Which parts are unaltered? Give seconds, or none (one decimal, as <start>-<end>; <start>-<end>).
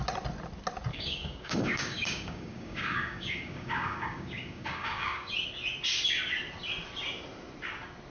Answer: 0.0-0.9; 5.3-8.1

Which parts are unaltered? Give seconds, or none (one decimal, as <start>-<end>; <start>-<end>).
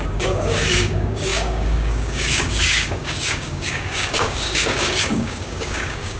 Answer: none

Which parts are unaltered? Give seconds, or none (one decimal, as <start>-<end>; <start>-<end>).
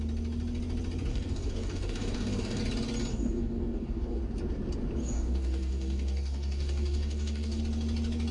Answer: 0.0-1.1; 2.6-3.1; 4.2-5.0; 7.6-8.3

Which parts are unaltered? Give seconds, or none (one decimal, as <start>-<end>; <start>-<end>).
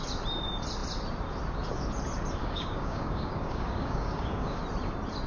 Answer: 0.0-2.4; 4.6-5.3